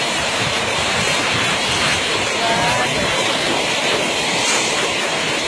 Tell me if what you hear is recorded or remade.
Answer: remade